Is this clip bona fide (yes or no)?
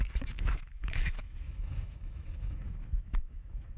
no